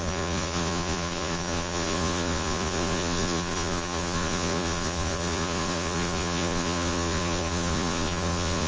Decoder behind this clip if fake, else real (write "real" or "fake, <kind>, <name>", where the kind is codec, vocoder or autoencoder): fake, vocoder, Vocos